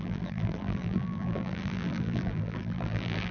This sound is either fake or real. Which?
fake